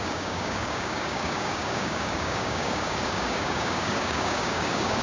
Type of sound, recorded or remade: remade